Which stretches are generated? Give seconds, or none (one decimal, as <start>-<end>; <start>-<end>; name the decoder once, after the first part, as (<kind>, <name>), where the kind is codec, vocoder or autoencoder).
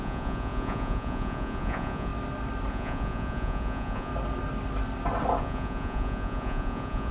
0.0-2.1 (vocoder, Vocos); 2.7-4.1; 5.4-7.1